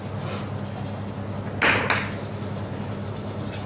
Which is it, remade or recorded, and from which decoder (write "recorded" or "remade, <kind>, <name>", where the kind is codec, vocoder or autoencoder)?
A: recorded